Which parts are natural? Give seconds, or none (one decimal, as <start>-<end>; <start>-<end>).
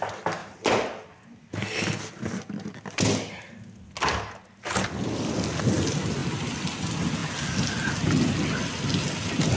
0.0-9.6